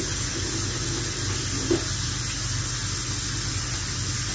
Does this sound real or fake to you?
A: real